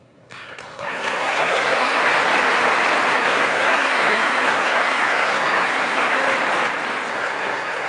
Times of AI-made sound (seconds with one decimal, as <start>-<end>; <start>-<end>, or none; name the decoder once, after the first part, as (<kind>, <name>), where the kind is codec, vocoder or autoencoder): 0.0-2.0 (codec, SNAC); 3.1-6.2; 7.1-7.9